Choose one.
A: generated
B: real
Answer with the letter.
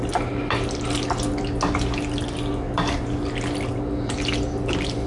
B